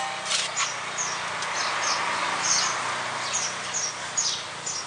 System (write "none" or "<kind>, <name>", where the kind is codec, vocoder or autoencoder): none